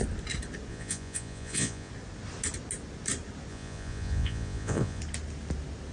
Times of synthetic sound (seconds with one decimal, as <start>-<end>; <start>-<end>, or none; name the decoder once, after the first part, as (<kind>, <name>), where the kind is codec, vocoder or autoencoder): 0.7-1.9 (vocoder, Vocos); 3.5-5.0